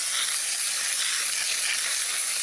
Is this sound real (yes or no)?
yes